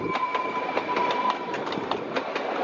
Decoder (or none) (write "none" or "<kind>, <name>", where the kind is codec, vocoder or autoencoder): none